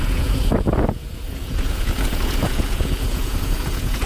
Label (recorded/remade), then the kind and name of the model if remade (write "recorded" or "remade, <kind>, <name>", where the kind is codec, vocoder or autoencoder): remade, vocoder, Vocos